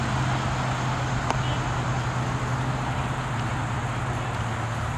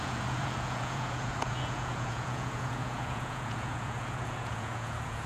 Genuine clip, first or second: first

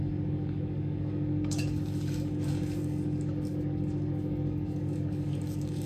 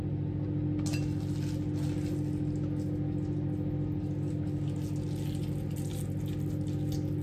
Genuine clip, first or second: second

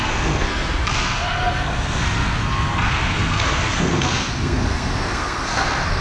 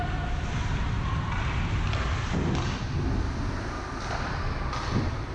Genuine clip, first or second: second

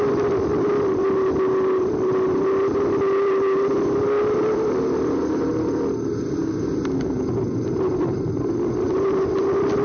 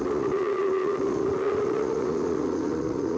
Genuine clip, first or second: first